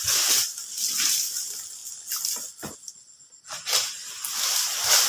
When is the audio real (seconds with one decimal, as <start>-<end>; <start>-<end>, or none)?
0.0-5.1